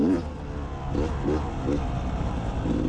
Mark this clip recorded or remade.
recorded